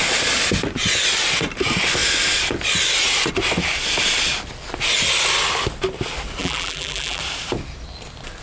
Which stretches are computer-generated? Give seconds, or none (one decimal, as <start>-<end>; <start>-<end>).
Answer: 6.4-7.2